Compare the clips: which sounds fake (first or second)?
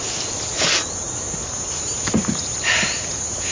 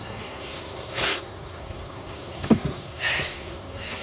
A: second